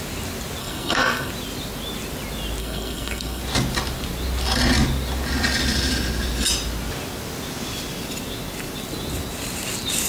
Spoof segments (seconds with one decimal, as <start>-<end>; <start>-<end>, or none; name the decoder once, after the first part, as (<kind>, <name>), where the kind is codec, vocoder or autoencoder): 0.6-1.3 (codec, SNAC); 2.6-3.4